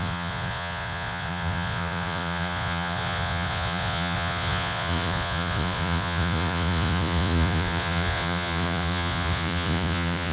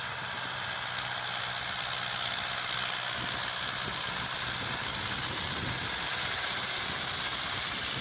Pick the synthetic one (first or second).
first